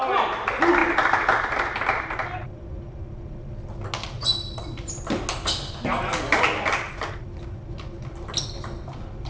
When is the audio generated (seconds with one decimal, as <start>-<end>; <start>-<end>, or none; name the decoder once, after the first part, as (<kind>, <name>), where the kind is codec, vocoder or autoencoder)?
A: none